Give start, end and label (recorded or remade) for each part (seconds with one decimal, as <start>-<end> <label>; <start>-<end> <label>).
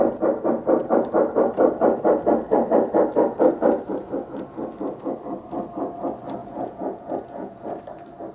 0.0-6.4 recorded; 6.4-7.8 remade; 7.8-8.3 recorded